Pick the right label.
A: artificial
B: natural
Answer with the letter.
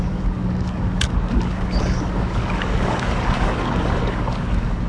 A